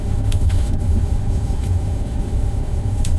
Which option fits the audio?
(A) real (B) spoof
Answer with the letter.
B